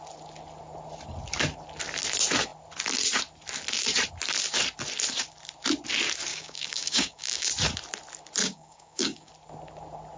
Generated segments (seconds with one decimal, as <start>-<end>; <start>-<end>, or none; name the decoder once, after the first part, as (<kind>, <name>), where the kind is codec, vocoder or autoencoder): 6.3-7.5 (codec, DAC); 8.4-9.3